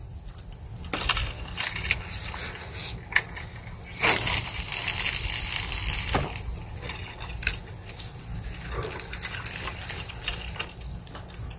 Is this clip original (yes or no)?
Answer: yes